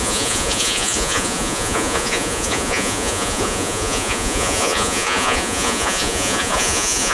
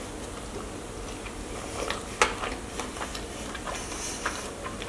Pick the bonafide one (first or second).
second